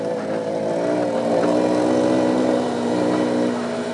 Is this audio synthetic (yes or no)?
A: no